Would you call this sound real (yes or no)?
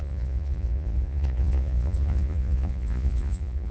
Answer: no